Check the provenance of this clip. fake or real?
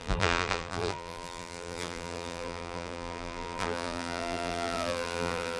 fake